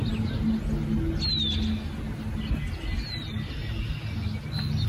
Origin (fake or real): real